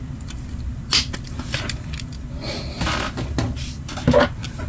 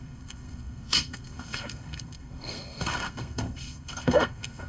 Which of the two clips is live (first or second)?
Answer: first